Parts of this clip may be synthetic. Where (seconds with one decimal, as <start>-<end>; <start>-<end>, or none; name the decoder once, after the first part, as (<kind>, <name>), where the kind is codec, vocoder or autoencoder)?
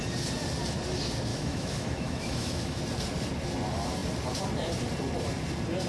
1.3-2.8 (autoencoder, DAC-VAE)